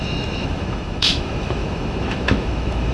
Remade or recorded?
remade